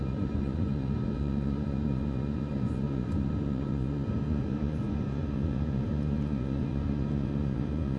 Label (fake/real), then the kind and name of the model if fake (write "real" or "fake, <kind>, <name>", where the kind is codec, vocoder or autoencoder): fake, vocoder, Vocos